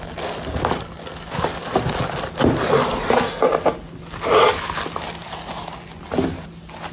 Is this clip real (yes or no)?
yes